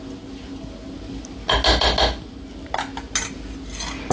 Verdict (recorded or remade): recorded